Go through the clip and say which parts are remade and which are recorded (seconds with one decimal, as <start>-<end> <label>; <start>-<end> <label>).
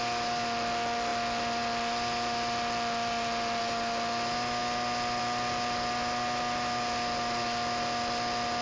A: 0.0-8.6 recorded